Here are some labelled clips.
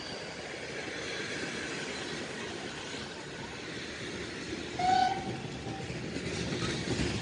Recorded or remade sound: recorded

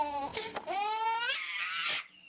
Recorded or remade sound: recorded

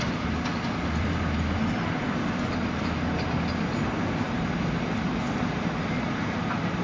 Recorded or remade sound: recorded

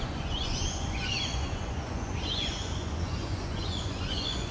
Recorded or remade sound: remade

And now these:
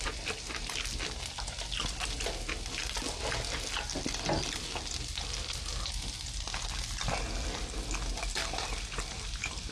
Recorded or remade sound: recorded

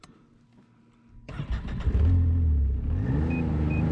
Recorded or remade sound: recorded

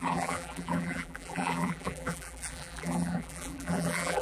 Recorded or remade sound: remade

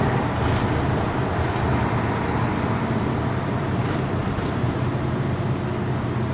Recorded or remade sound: recorded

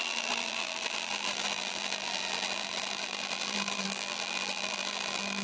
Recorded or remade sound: remade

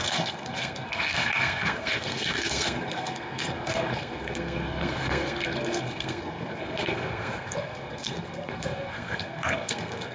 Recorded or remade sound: remade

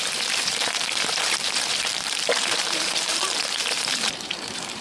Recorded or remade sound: remade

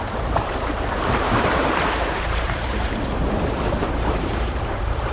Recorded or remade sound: remade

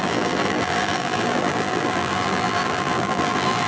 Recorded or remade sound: remade